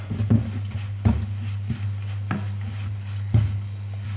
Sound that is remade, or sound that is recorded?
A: recorded